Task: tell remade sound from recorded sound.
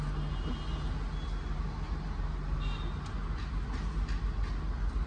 recorded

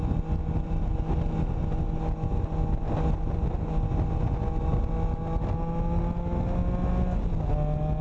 recorded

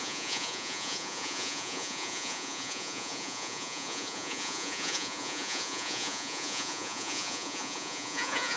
remade